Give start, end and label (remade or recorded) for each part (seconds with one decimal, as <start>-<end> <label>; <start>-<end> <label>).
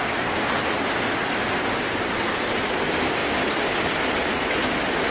0.0-3.2 recorded; 3.2-3.9 remade; 3.9-5.1 recorded